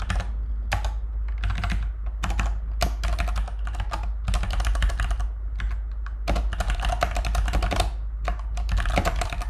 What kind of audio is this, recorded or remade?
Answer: recorded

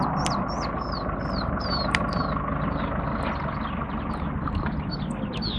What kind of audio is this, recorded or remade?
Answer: recorded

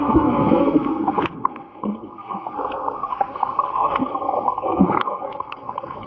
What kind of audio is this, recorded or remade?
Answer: remade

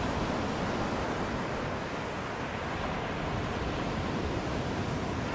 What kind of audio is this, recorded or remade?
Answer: recorded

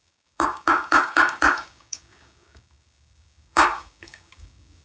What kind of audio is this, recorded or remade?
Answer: remade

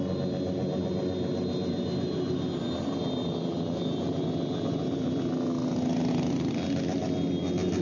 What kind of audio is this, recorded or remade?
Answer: recorded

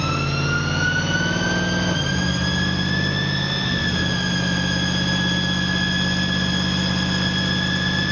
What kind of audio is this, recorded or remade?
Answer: recorded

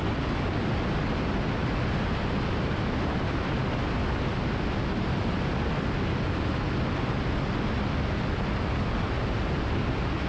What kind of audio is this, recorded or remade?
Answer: recorded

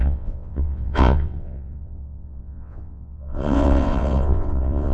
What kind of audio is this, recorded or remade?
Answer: remade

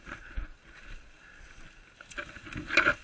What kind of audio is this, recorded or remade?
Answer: recorded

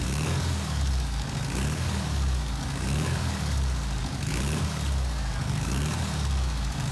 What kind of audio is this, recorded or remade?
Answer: remade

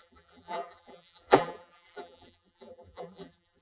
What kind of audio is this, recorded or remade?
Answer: remade